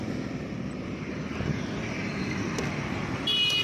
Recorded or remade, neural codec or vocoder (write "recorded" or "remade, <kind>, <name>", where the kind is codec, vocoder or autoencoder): remade, vocoder, BigVGAN v2